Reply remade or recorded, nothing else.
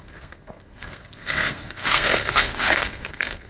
remade